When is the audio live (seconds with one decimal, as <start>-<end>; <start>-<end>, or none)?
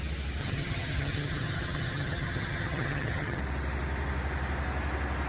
0.0-0.4; 3.4-5.3